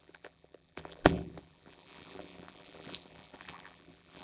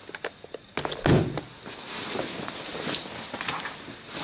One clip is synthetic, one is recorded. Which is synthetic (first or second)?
first